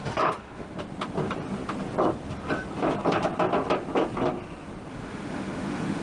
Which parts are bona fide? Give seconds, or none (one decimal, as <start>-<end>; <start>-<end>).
0.8-4.9